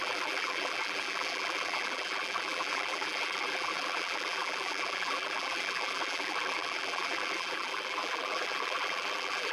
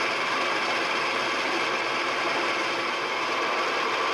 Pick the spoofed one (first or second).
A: first